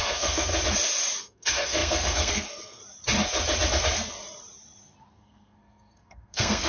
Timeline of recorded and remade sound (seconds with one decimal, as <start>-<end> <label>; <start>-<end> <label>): 0.0-0.5 remade; 0.5-1.2 recorded; 1.2-2.8 remade; 2.8-5.1 recorded; 5.1-6.7 remade